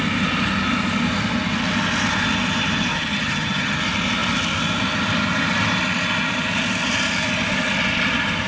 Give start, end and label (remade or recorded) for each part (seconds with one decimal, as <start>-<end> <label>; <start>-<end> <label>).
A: 0.0-2.9 recorded; 2.9-3.8 remade; 3.8-8.5 recorded